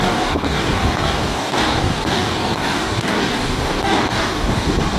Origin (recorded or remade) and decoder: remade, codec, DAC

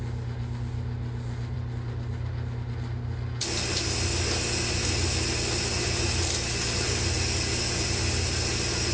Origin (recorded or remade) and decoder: recorded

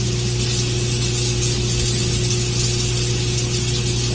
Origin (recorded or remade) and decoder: recorded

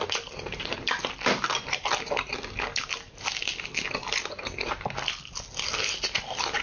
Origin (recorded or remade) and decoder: recorded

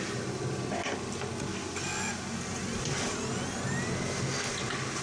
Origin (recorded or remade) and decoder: recorded